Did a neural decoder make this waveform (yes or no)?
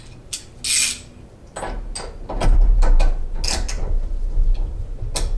no